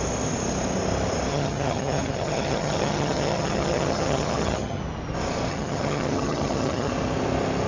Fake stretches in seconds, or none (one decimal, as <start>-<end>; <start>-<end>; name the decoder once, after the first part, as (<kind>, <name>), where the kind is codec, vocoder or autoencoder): 1.3-4.8 (vocoder, HiFi-GAN); 5.5-6.9

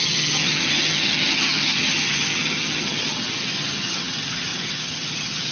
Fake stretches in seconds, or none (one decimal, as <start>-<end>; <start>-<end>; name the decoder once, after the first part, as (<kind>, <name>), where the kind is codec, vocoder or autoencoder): 0.0-5.5 (vocoder, HiFi-GAN)

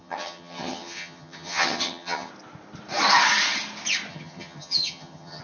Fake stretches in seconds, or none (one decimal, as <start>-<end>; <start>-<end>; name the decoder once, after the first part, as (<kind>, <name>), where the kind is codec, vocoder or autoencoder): 0.0-2.3 (vocoder, HiFi-GAN); 4.1-5.4

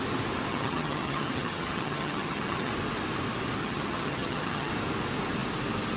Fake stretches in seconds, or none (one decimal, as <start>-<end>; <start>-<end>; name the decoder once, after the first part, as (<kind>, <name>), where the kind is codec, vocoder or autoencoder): 0.5-2.7 (vocoder, HiFi-GAN); 3.6-4.7

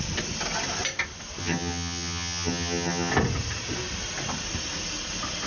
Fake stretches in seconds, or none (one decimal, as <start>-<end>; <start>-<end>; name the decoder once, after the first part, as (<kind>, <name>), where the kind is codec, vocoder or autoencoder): 1.4-3.1 (vocoder, HiFi-GAN)